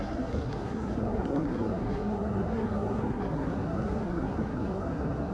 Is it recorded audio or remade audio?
remade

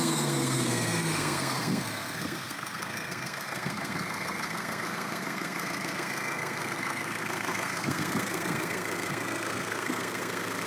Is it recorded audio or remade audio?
remade